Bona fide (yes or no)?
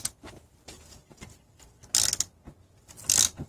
yes